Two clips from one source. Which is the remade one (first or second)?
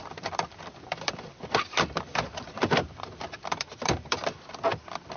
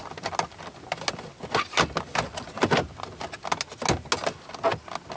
first